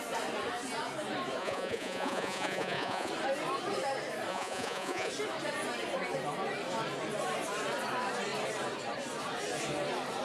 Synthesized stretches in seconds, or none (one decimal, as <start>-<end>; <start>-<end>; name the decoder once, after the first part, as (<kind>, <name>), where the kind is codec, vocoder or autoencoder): 1.4-3.1 (vocoder, Vocos); 4.3-5.1